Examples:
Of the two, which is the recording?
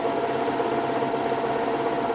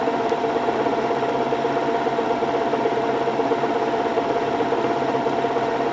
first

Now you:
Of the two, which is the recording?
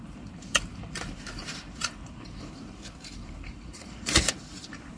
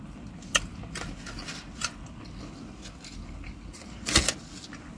second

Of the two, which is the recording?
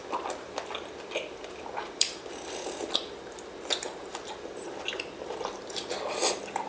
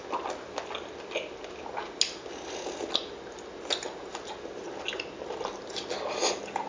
second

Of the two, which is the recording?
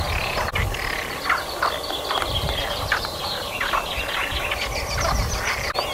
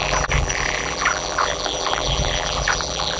first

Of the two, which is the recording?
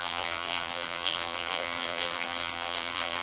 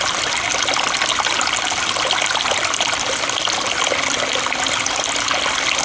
second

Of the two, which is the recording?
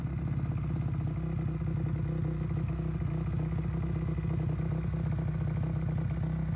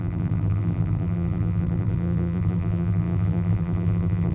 first